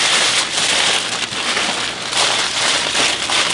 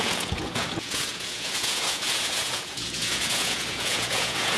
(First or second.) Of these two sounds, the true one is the first